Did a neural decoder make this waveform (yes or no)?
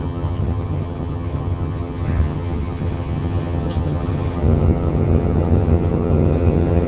yes